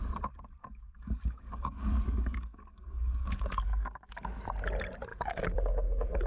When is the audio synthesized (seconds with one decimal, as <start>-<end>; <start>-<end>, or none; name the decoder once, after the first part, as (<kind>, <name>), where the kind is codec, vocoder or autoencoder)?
0.6-4.4 (codec, DAC); 5.1-6.3